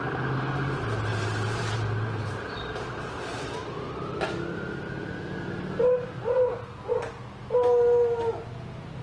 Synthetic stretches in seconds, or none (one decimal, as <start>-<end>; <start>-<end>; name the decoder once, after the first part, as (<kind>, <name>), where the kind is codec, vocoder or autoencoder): 1.1-2.2 (vocoder, BigVGAN v2); 6.0-6.5